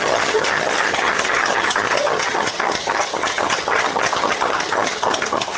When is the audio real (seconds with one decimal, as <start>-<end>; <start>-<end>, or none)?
none